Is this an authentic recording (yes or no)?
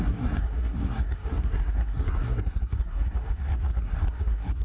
no